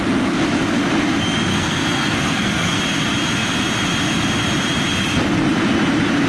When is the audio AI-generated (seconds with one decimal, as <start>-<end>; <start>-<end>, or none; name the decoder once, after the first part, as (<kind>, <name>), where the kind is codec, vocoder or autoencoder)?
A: 1.5-2.8 (codec, SNAC)